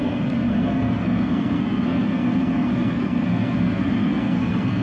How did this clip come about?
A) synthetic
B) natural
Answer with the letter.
A